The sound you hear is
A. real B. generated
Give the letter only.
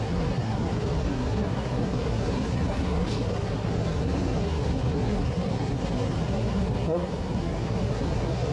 B